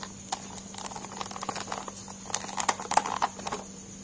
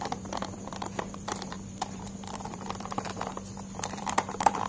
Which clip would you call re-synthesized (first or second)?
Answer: second